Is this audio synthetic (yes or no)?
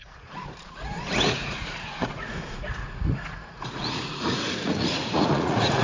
yes